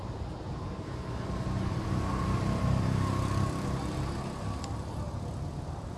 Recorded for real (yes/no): yes